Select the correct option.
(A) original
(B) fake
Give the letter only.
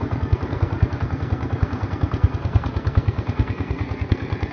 B